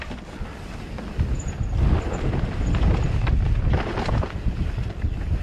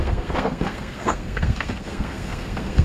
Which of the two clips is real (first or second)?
first